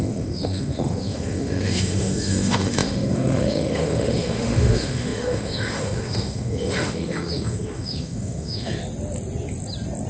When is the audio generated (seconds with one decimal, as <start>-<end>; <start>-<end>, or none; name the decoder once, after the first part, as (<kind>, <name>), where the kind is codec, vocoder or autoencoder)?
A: 0.0-8.8 (autoencoder, DAC-VAE)